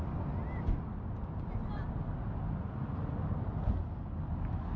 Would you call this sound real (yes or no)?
yes